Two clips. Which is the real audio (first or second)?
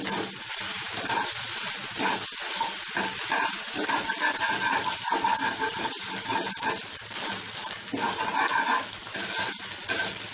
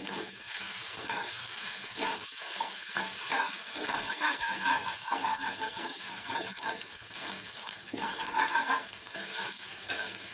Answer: first